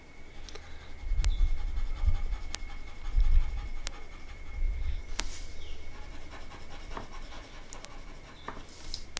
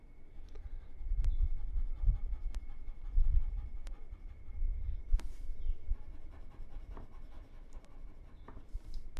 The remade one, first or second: second